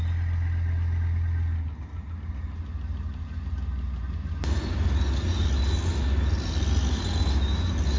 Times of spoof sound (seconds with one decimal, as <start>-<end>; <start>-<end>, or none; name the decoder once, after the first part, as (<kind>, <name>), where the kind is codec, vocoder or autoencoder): none